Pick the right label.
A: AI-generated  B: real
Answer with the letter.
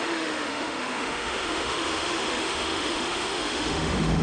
A